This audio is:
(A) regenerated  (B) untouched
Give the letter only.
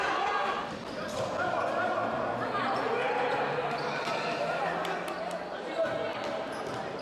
B